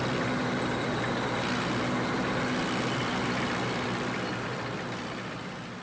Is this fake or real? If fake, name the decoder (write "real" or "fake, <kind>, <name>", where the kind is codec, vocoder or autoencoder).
real